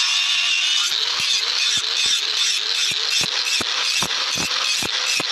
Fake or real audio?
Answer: real